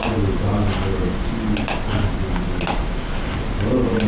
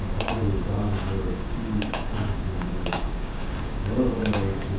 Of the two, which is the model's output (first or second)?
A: second